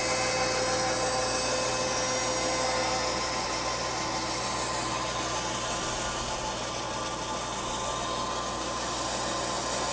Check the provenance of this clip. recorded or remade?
recorded